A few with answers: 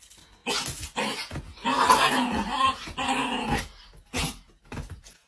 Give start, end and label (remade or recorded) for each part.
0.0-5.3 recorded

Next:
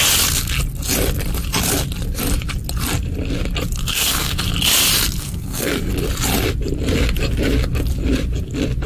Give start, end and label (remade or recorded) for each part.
0.0-3.8 recorded; 3.8-4.4 remade; 4.4-5.2 recorded; 5.2-5.9 remade; 5.9-8.9 recorded

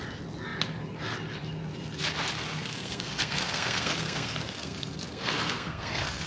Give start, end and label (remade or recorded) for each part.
0.0-2.5 recorded; 2.5-6.3 remade

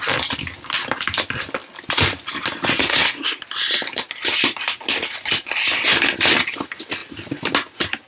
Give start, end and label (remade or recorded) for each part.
0.0-2.8 recorded; 2.8-3.4 remade; 3.4-8.1 recorded

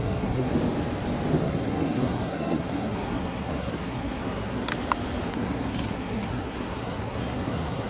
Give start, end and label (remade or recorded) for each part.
0.0-0.5 remade; 0.5-1.4 recorded; 1.4-4.7 remade; 4.7-5.3 recorded; 5.3-7.9 remade

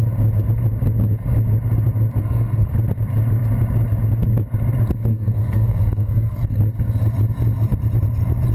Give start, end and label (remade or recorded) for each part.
0.0-2.2 recorded; 2.2-2.7 remade; 2.7-5.1 recorded; 5.1-6.6 remade; 6.6-8.5 recorded